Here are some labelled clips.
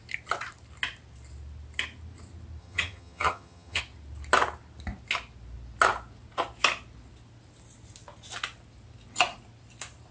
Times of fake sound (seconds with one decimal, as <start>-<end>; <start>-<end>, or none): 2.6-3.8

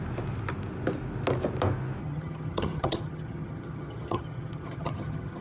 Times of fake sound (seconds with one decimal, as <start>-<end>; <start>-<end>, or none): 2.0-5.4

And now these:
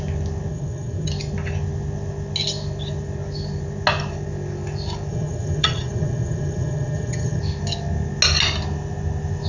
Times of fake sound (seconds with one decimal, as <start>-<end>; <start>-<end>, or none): 0.5-1.1; 5.1-7.4

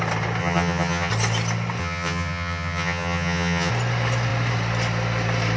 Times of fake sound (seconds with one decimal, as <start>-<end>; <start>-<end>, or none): 0.4-1.1; 1.8-3.7

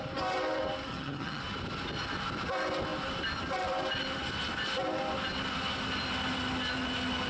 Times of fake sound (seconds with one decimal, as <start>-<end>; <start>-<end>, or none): 0.9-1.4